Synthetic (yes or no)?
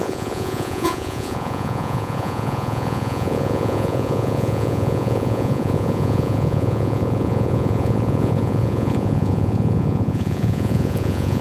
yes